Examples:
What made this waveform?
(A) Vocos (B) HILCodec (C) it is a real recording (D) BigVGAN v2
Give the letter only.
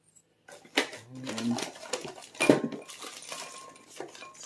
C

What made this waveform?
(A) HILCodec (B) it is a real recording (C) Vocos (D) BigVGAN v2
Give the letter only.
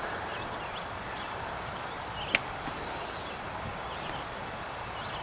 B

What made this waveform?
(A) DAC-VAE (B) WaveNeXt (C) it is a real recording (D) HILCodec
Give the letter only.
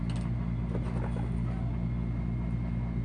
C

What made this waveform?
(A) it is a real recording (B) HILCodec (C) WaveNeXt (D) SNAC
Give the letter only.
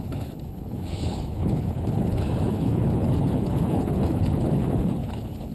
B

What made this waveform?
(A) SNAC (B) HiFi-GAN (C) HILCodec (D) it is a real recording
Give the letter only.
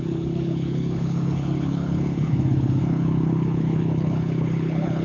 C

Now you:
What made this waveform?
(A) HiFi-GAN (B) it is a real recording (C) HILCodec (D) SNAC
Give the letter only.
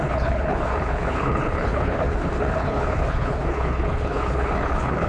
C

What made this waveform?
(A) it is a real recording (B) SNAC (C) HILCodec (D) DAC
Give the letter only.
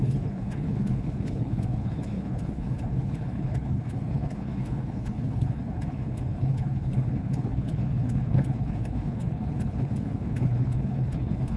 C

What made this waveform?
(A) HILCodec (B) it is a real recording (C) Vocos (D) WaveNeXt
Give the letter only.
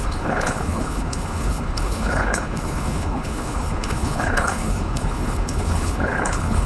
A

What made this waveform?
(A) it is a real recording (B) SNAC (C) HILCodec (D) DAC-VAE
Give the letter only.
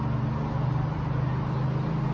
A